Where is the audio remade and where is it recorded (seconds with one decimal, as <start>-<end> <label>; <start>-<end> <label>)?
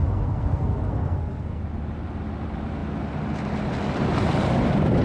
0.0-1.6 remade; 1.6-5.0 recorded